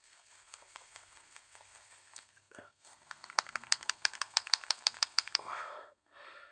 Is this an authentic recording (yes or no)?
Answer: no